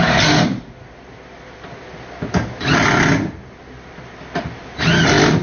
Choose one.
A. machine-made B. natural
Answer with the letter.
B